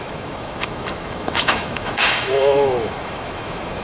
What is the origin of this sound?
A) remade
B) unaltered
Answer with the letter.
A